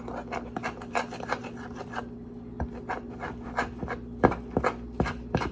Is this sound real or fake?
real